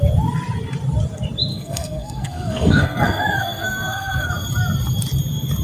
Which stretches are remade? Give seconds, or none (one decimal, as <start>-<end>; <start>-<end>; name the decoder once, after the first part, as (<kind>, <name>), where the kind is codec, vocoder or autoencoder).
1.5-4.3 (codec, SNAC)